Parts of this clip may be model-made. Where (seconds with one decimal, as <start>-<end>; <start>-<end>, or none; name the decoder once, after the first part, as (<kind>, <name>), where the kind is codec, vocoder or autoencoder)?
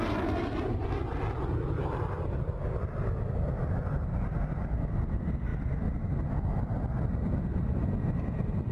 none